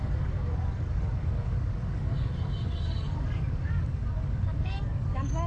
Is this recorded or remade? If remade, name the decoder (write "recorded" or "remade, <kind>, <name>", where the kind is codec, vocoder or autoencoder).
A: remade, codec, DAC